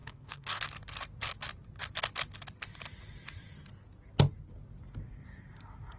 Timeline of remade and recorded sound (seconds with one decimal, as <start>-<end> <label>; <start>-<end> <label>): 0.0-0.6 remade; 0.6-6.0 recorded